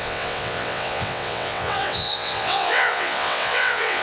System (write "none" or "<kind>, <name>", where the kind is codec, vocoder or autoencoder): vocoder, WaveNeXt